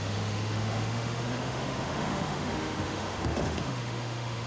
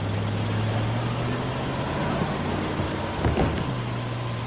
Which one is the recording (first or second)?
second